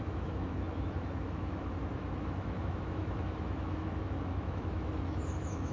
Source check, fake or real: fake